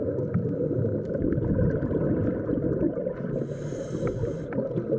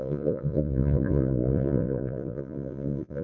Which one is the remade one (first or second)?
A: second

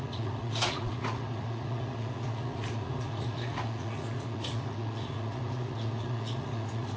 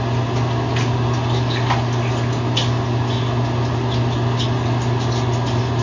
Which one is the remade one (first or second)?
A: first